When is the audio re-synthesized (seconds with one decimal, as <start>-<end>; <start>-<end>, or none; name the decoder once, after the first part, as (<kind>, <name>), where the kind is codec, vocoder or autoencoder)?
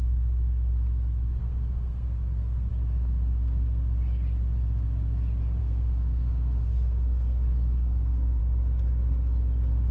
1.4-2.7 (codec, SNAC); 5.6-8.4